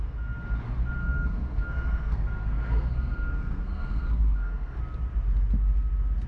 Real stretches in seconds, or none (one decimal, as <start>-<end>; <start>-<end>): 0.0-1.0; 4.8-6.3